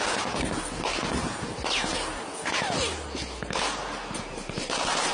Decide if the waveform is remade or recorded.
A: recorded